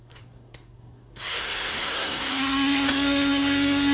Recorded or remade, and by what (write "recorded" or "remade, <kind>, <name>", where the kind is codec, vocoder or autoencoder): remade, codec, SNAC